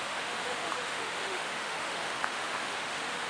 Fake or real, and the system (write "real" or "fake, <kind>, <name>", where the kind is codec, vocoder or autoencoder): fake, autoencoder, DAC-VAE